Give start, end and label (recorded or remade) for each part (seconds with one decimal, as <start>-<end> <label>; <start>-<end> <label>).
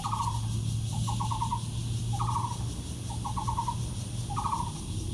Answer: 0.0-5.1 recorded